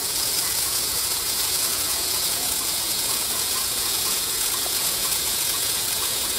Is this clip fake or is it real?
fake